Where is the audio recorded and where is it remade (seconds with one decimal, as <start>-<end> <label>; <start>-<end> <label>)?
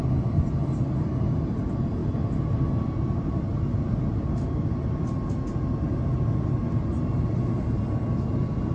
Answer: 0.0-8.7 recorded